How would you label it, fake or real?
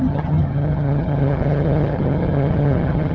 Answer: fake